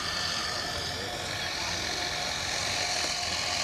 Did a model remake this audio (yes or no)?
no